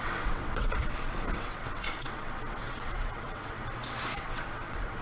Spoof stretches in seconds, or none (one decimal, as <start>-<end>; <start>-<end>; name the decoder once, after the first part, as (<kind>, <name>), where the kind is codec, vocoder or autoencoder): 0.0-3.6 (vocoder, WaveNeXt); 4.2-5.0